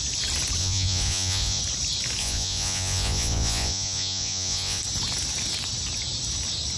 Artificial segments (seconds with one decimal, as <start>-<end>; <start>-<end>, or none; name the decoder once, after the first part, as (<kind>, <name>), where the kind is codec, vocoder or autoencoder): 0.6-1.6 (vocoder, Vocos); 2.2-4.8